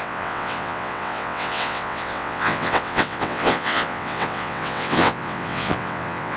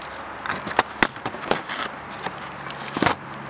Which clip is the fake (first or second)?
first